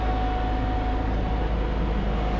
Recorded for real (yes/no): yes